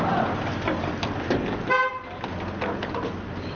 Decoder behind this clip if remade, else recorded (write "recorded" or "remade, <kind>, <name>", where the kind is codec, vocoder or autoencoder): recorded